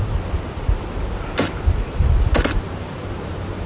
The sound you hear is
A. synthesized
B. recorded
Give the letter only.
B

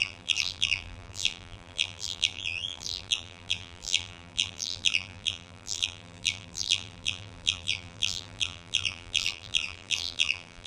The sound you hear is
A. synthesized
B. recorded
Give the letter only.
A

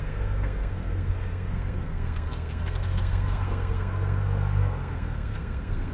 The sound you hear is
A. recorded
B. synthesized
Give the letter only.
B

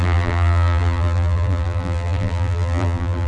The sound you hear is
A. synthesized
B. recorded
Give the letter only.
A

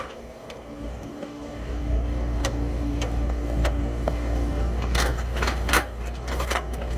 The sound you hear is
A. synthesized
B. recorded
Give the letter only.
A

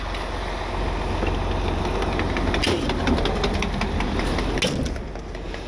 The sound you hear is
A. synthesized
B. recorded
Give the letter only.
B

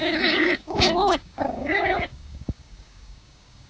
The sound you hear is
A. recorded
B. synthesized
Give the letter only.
B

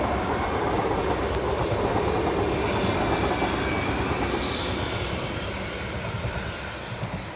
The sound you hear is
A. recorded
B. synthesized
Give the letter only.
A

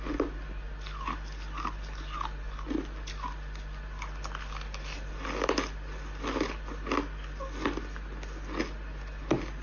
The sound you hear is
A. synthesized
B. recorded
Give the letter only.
B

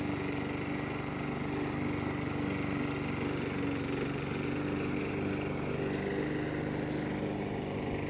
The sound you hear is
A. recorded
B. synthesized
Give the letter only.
A